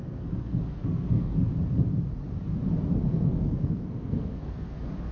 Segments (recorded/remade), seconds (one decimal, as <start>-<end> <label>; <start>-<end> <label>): 0.0-1.5 remade; 1.5-3.0 recorded; 3.0-5.1 remade